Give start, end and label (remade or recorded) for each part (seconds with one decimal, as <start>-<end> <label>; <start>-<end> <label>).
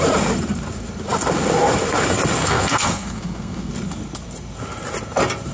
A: 0.0-2.4 recorded; 2.4-3.7 remade; 3.7-5.5 recorded